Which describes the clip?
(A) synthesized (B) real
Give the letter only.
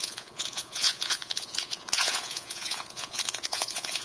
A